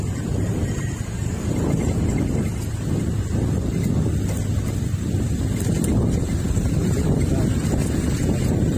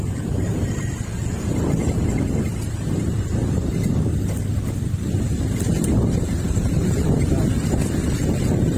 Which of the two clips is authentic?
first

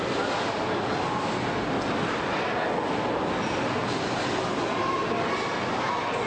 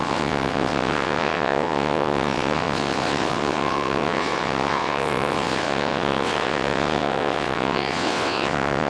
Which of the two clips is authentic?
first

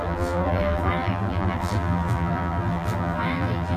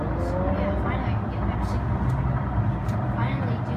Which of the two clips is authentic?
second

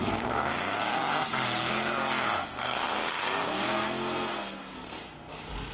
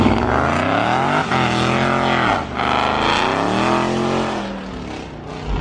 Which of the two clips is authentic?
second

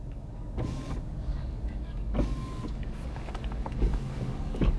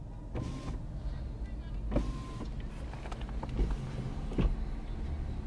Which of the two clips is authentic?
second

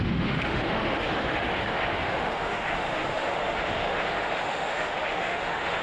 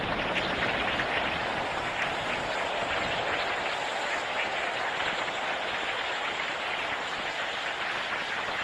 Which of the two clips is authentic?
second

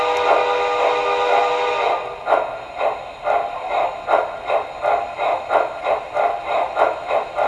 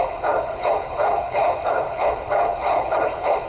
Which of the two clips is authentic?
first